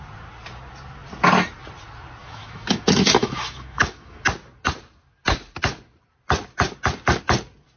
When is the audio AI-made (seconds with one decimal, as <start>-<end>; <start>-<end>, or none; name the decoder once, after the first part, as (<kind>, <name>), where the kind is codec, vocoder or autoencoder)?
2.2-4.2 (autoencoder, DAC-VAE)